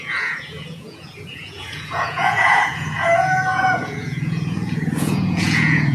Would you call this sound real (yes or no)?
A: no